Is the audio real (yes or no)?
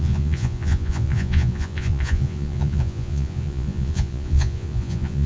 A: no